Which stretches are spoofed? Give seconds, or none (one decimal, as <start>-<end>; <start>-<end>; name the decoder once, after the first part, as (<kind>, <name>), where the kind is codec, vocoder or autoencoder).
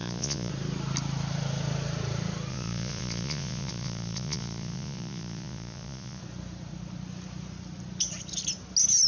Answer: 0.0-0.5 (vocoder, Vocos); 2.5-6.2